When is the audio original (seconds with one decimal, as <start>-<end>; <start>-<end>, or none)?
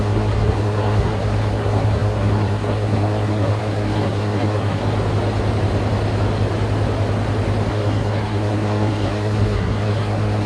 4.8-7.7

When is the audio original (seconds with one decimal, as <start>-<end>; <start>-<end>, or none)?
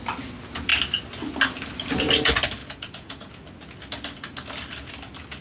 0.0-2.6; 3.3-5.4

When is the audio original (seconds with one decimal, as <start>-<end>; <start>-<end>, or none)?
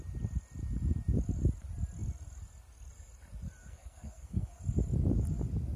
0.0-3.6; 4.6-5.8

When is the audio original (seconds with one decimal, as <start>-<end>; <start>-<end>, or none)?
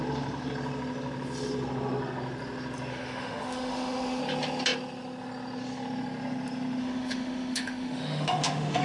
0.0-2.9; 4.2-6.8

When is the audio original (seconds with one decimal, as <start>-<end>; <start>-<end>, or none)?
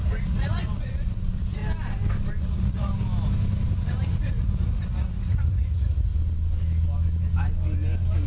1.6-2.4; 2.9-3.7; 6.1-8.3